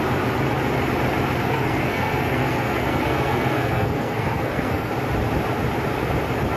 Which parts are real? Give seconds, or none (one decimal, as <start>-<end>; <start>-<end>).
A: 0.0-1.4; 4.9-6.6